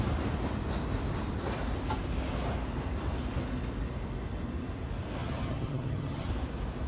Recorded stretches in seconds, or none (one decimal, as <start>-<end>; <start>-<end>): 0.0-5.2; 6.3-6.9